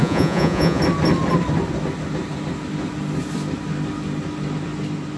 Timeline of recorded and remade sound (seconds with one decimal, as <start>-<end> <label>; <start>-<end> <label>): 0.0-0.8 remade; 0.8-5.2 recorded